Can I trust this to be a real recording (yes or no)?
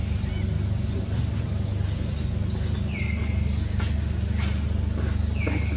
yes